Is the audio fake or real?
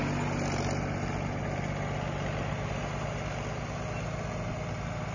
real